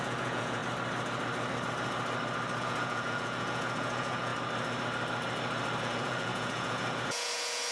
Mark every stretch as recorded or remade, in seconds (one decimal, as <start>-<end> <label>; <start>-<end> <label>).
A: 0.0-0.6 remade; 0.6-2.6 recorded; 2.6-4.3 remade; 4.3-5.8 recorded; 5.8-7.7 remade